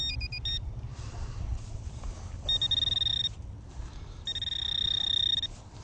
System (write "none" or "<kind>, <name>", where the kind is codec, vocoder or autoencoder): none